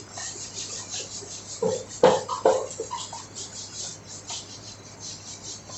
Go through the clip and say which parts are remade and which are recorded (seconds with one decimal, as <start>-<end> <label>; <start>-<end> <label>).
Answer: 0.0-5.8 recorded